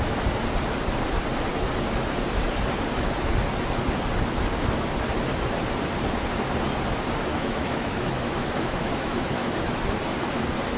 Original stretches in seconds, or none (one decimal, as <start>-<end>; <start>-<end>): 0.0-7.3; 9.8-10.8